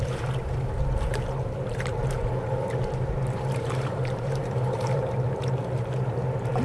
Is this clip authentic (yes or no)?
no